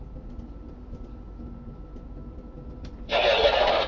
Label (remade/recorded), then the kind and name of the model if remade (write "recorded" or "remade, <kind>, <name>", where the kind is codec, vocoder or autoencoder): recorded